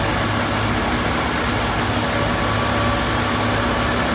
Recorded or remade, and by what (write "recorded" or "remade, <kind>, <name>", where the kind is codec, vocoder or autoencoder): recorded